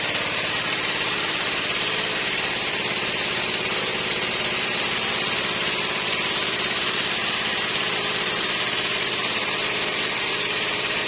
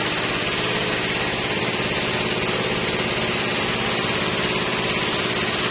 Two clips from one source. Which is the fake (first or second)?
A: first